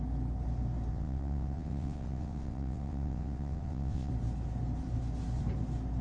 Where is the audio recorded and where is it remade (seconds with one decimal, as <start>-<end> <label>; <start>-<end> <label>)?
0.0-0.9 recorded; 0.9-4.1 remade; 4.1-6.0 recorded